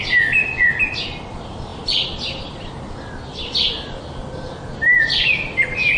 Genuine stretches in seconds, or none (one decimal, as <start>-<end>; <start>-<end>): 0.0-6.0